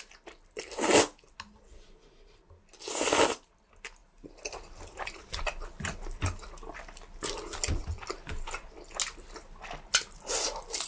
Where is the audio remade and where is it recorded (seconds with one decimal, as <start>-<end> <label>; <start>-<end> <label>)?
0.0-10.9 recorded